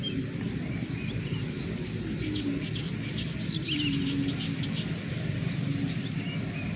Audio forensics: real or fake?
real